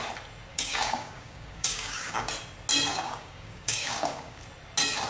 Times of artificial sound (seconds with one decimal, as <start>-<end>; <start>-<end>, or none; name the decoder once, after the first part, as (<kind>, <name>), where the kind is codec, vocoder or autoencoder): 0.5-2.3 (codec, DAC); 2.9-4.4